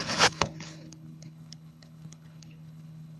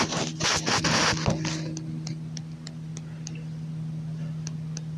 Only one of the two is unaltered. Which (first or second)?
second